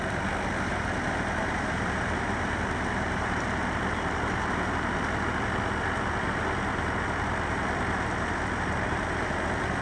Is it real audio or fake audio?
real